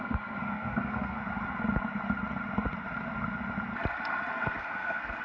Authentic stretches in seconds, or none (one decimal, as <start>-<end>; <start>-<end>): 1.2-4.3